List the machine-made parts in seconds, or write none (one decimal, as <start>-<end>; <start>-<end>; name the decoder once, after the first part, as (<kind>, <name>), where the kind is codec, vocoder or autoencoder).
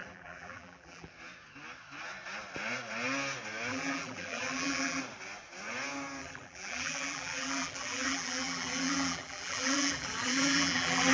0.0-1.1 (vocoder, BigVGAN v2); 3.7-5.0; 6.2-11.1